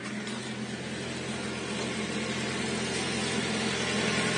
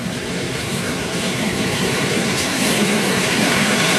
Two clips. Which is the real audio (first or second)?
first